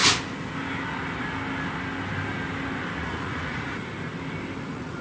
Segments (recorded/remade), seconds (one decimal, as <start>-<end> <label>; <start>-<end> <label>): 0.0-3.0 recorded; 3.0-3.8 remade; 3.8-4.6 recorded; 4.6-5.0 remade